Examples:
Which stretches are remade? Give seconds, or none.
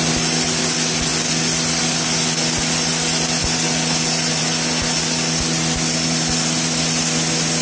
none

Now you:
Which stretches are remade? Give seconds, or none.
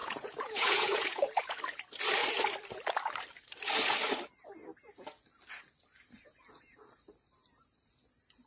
0.0-1.6 (vocoder, Vocos)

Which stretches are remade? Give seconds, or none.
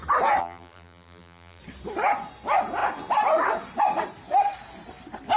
0.4-1.6 (vocoder, BigVGAN v2)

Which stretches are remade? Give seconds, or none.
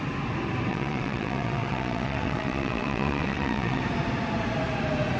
0.7-3.8 (vocoder, WaveNeXt)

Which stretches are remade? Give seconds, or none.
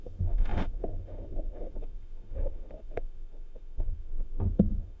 0.0-5.0 (autoencoder, DAC-VAE)